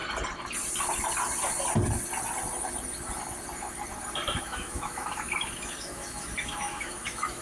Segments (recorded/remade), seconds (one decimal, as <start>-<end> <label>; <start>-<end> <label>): 0.0-4.4 recorded; 4.4-7.4 remade